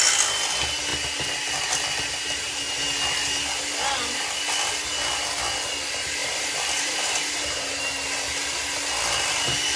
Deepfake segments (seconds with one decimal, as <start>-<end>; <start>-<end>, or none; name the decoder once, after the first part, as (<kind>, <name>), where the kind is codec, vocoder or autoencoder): 6.2-7.8 (vocoder, BigVGAN v2)